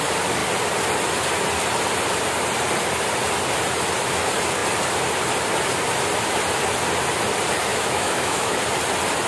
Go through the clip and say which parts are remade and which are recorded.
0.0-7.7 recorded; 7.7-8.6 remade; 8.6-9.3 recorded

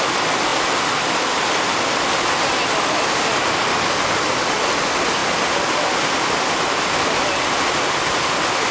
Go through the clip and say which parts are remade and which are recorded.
0.0-8.7 recorded

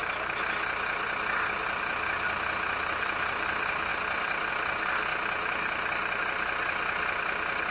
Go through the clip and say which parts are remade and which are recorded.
0.0-2.9 recorded; 2.9-5.1 remade; 5.1-6.2 recorded; 6.2-7.7 remade

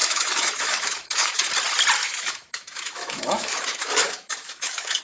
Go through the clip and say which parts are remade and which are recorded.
0.0-1.5 remade; 1.5-2.0 recorded; 2.0-5.0 remade

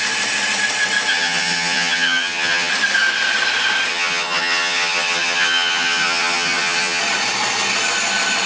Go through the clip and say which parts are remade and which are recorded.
0.0-1.1 recorded; 1.1-2.7 remade; 2.7-3.9 recorded; 3.9-7.0 remade; 7.0-8.5 recorded

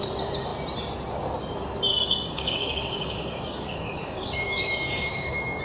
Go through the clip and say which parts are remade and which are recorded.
0.0-1.9 recorded; 1.9-5.6 remade

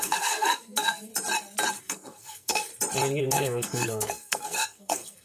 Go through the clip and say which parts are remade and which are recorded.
0.0-1.1 remade; 1.1-1.8 recorded; 1.8-2.7 remade; 2.7-3.2 recorded; 3.2-5.2 remade